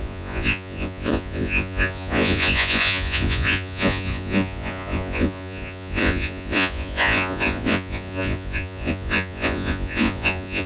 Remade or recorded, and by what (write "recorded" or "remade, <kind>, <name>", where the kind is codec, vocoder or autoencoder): remade, vocoder, Vocos